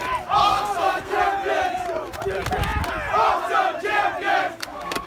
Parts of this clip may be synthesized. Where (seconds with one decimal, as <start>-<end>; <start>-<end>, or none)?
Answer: 0.4-1.2; 4.4-5.1